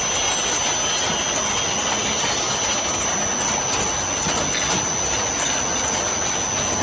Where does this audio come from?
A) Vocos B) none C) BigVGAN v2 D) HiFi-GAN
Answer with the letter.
B